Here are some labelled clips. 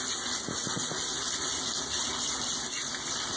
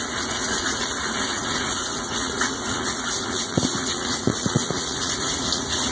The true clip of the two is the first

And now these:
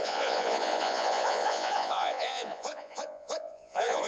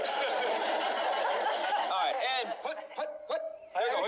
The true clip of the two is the second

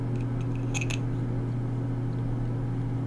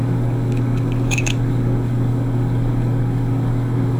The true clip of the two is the first